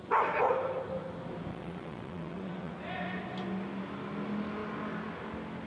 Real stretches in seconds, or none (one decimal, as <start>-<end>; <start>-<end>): 0.0-1.5; 2.7-5.7